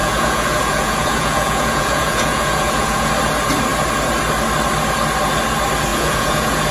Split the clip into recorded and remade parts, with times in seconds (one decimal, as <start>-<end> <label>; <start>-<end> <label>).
0.0-3.1 remade; 3.1-5.9 recorded; 5.9-6.7 remade